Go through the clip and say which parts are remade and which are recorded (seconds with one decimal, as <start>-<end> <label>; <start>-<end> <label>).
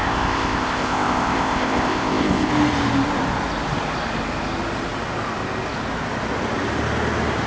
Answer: 0.0-2.5 remade; 2.5-7.5 recorded